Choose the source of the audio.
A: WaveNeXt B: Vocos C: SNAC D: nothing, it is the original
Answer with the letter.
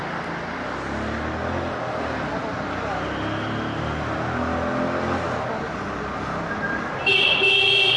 D